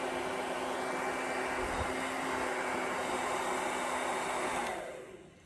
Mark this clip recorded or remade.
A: recorded